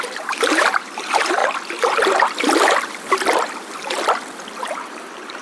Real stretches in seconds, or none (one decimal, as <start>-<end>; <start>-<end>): 1.4-4.6